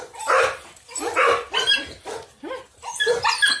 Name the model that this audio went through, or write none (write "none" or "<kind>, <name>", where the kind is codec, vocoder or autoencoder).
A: none